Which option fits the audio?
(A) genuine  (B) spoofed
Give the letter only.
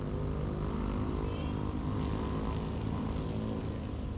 A